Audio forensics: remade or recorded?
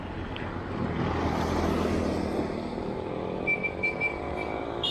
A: recorded